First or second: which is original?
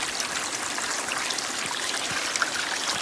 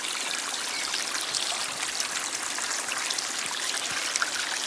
second